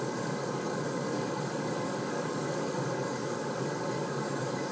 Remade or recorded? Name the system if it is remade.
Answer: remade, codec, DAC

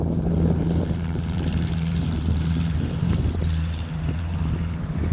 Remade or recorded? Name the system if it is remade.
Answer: remade, vocoder, BigVGAN v2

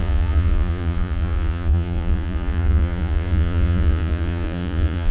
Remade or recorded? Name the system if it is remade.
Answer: remade, vocoder, Vocos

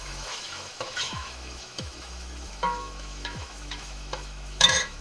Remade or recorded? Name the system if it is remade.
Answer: remade, autoencoder, DAC-VAE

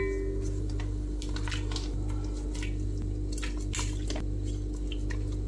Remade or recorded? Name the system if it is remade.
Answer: recorded